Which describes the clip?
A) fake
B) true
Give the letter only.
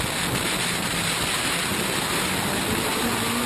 B